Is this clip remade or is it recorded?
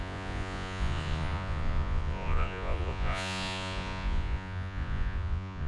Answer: remade